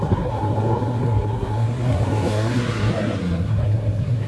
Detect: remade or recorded remade